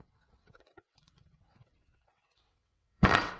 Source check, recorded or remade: remade